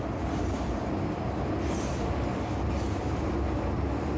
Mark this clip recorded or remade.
recorded